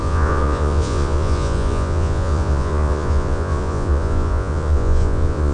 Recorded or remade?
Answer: remade